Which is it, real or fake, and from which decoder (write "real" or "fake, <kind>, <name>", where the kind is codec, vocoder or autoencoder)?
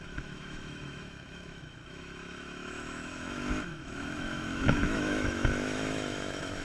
fake, autoencoder, DAC-VAE